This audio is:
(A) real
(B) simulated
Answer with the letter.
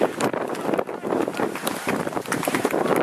A